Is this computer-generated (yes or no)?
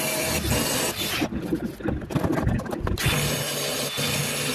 no